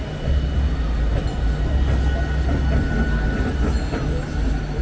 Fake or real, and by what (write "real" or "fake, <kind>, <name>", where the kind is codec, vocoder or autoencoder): real